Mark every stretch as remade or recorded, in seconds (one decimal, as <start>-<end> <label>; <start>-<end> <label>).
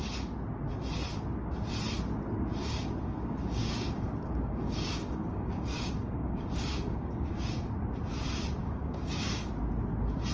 0.0-2.6 recorded; 2.6-7.7 remade; 7.7-8.6 recorded; 8.6-9.5 remade; 9.5-10.3 recorded